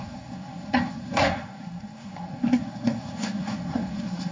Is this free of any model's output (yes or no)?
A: no